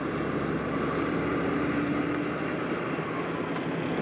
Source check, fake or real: real